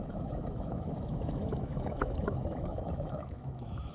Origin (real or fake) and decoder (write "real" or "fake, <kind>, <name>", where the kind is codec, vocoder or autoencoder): fake, autoencoder, DAC-VAE